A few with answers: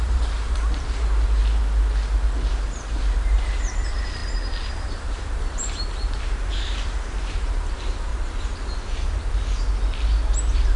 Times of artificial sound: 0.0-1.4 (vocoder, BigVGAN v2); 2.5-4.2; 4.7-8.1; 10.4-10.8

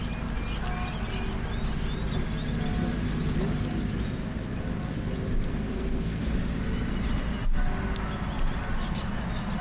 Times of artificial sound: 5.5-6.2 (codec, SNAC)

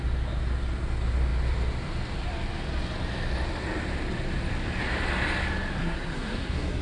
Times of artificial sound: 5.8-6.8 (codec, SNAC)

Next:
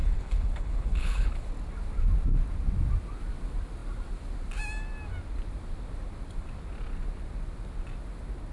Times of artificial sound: 0.0-1.5 (codec, HILCodec)